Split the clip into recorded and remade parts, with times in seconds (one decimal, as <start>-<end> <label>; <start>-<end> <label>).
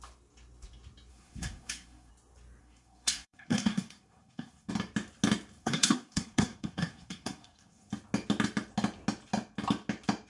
0.0-1.1 recorded; 1.1-2.1 remade; 2.1-2.6 recorded; 2.6-4.7 remade; 4.7-5.6 recorded; 5.6-7.9 remade; 7.9-10.3 recorded